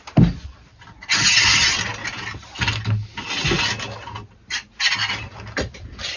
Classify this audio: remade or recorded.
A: recorded